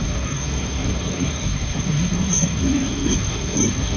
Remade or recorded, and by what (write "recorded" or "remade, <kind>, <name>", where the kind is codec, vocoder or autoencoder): remade, codec, SNAC